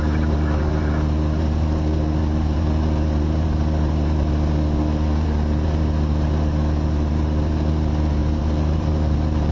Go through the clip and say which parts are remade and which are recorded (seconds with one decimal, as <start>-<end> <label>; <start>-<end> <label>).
0.0-8.2 recorded; 8.2-9.5 remade